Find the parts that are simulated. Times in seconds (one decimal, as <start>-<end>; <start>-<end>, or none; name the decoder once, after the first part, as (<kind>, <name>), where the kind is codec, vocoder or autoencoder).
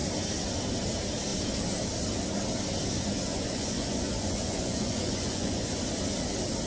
3.3-5.8 (vocoder, Vocos)